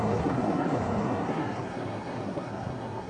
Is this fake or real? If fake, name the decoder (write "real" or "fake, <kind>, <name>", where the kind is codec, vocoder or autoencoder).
fake, codec, SNAC